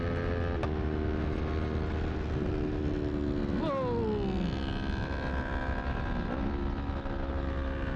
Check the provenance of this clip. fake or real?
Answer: real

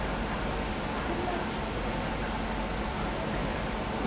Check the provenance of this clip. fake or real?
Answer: real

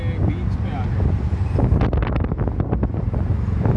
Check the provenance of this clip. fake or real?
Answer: real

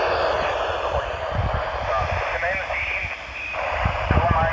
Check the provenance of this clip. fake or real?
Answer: real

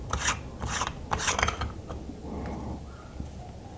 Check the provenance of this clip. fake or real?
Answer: real